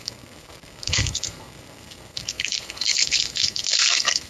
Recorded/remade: remade